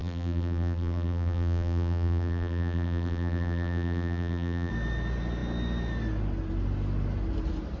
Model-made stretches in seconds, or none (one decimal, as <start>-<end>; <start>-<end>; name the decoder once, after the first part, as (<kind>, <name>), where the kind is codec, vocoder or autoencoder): 0.0-4.7 (vocoder, BigVGAN v2)